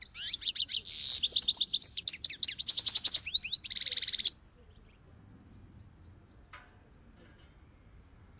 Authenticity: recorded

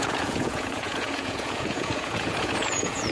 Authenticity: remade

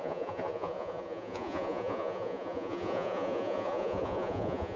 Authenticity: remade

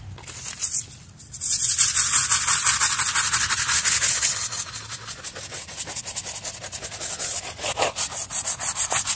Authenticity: recorded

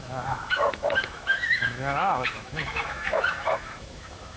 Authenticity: remade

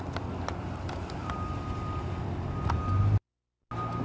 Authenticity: recorded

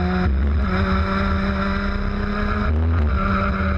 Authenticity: recorded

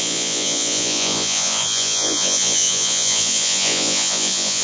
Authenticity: remade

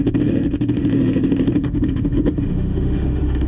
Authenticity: remade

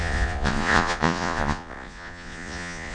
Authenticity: remade